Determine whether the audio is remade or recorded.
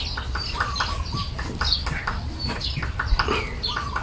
recorded